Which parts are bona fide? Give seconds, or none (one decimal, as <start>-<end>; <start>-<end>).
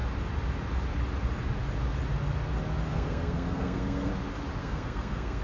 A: 0.0-2.9; 4.1-4.6